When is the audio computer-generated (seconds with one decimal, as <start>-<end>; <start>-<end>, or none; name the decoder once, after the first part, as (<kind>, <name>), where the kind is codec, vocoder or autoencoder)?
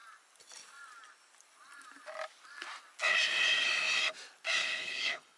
4.6-5.4 (codec, HILCodec)